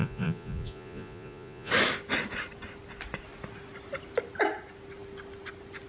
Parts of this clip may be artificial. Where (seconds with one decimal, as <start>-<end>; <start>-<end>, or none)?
0.0-1.7

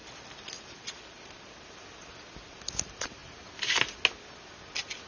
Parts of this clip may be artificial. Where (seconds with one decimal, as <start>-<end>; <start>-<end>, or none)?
none

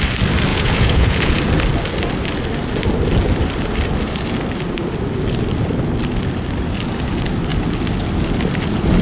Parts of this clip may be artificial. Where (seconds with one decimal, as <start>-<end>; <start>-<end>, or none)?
0.5-1.4

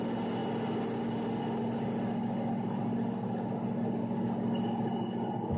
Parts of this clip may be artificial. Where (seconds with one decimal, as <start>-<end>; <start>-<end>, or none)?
none

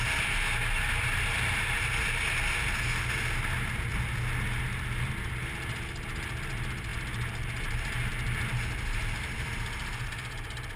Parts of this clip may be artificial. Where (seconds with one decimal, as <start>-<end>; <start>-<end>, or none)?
none

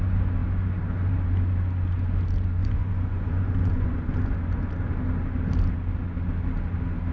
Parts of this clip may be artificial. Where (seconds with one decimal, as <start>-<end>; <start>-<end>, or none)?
2.6-4.3

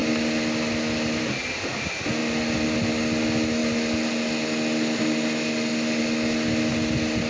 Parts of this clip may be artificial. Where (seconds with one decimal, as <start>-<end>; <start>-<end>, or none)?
none

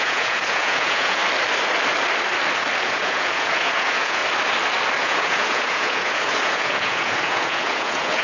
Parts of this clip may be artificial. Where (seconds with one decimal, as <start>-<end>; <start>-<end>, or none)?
0.0-1.2; 2.8-4.2; 5.0-8.2